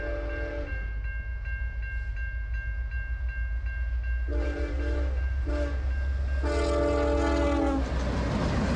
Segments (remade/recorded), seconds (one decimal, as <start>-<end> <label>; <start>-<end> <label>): 0.0-4.3 recorded; 4.3-5.5 remade; 5.5-8.8 recorded